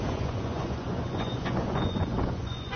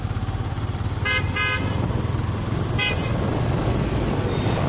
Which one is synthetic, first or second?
first